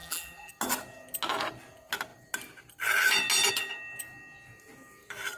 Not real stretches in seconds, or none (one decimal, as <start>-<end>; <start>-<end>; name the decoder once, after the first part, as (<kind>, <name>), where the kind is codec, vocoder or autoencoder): 0.0-0.5 (vocoder, BigVGAN v2)